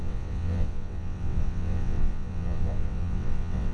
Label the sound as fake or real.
fake